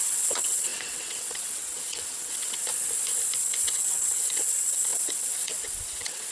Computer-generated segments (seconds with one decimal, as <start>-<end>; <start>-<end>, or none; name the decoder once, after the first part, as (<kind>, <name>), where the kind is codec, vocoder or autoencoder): 0.0-2.7 (vocoder, WaveNeXt); 3.4-6.3